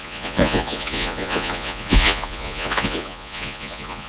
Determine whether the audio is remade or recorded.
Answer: remade